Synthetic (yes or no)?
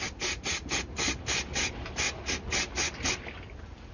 no